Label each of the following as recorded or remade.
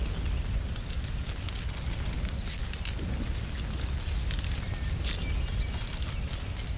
recorded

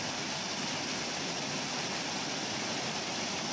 recorded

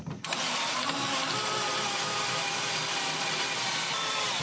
recorded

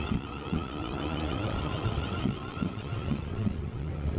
remade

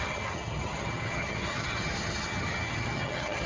remade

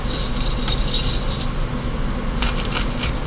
recorded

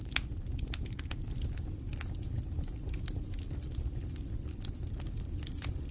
recorded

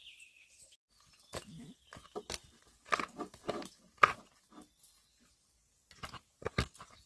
recorded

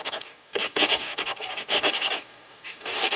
remade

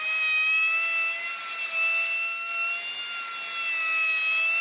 recorded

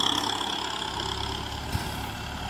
recorded